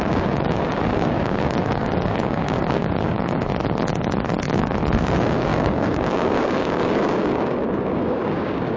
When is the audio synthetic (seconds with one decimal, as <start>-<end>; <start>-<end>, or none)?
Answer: 0.0-3.5; 4.4-8.8